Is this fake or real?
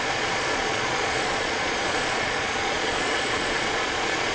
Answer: fake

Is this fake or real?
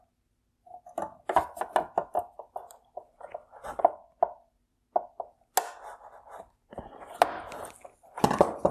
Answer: real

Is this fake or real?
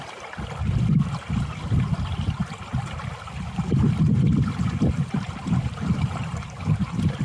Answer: real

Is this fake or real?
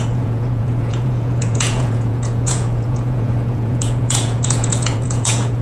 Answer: fake